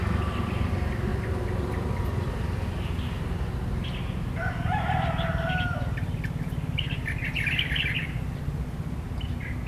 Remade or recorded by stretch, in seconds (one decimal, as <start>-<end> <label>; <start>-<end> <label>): 0.0-9.7 recorded